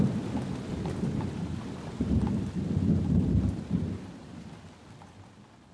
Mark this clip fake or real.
real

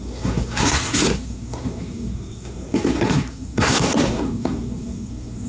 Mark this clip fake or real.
fake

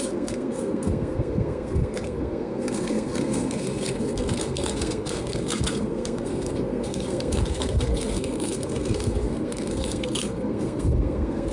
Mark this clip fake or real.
fake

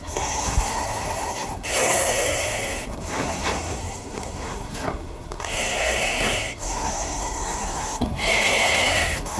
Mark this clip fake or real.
fake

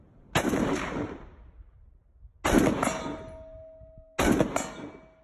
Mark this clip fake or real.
real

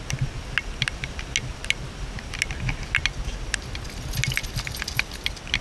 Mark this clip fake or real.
real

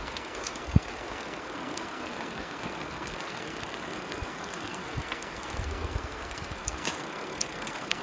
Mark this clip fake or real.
fake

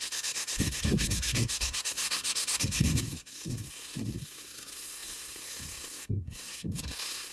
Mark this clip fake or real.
fake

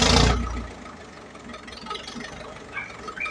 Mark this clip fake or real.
real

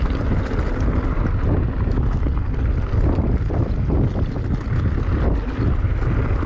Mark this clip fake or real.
real